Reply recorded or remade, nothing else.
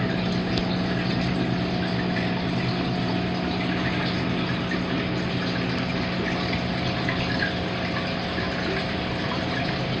recorded